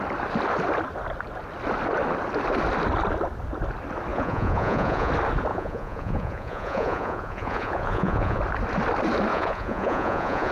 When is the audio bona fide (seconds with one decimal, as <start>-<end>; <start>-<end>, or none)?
0.0-4.1; 5.1-5.5; 8.4-9.3